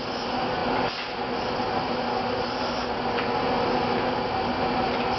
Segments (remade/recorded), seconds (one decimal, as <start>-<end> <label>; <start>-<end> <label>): 0.0-5.2 recorded